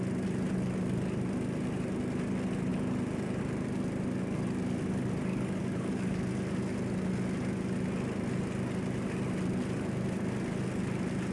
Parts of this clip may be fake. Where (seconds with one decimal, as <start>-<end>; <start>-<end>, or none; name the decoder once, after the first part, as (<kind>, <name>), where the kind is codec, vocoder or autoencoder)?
5.3-6.2 (codec, DAC)